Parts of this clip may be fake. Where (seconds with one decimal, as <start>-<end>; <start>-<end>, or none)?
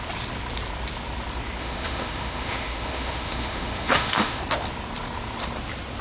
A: 1.6-4.4